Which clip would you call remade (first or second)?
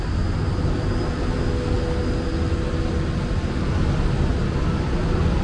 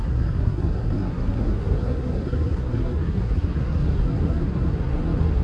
second